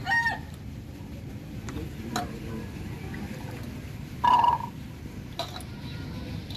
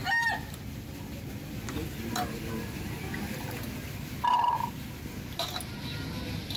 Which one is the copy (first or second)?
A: first